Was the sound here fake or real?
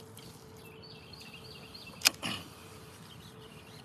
fake